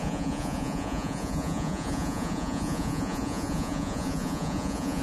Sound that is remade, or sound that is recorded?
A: remade